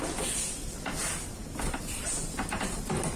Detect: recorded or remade recorded